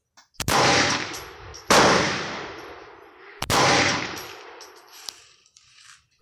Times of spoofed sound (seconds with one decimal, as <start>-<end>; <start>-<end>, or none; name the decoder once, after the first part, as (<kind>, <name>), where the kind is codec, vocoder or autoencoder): 0.0-1.5 (vocoder, BigVGAN v2); 3.3-6.2